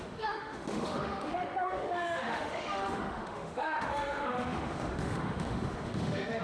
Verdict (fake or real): fake